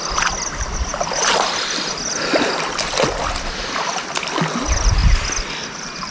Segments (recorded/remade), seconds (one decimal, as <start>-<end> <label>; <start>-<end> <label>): 0.0-6.1 recorded